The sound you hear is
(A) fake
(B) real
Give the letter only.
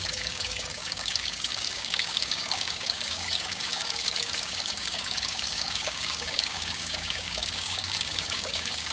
A